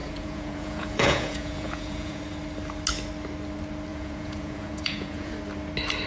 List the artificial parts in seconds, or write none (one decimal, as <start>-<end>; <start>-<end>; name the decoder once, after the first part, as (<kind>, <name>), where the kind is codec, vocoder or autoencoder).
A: 0.0-2.2 (vocoder, Vocos); 3.9-5.3